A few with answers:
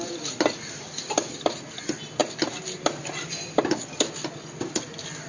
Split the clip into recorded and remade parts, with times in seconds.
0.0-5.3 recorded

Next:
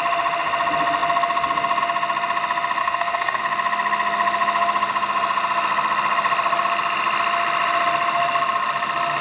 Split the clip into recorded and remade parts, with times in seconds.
0.0-2.8 recorded; 2.8-3.4 remade; 3.4-9.2 recorded